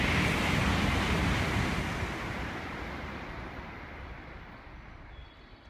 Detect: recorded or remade recorded